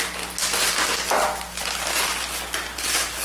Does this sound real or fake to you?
real